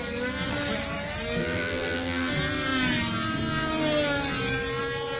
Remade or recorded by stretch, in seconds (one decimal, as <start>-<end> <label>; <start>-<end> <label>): 0.0-1.4 recorded; 1.4-2.3 remade; 2.3-5.2 recorded